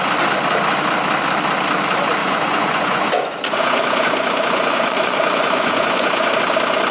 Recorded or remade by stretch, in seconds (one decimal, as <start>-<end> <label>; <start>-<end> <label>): 0.0-2.2 recorded; 2.2-6.3 remade; 6.3-6.9 recorded